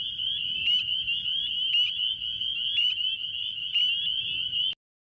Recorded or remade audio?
recorded